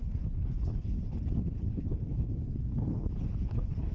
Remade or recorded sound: remade